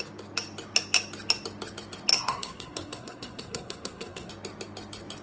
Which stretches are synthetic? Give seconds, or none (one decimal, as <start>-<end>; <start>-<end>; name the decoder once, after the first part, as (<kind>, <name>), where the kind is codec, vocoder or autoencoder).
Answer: 2.1-4.3 (codec, SNAC)